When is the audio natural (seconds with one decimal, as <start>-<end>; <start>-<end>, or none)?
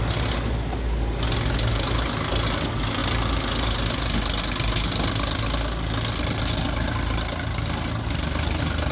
0.0-8.9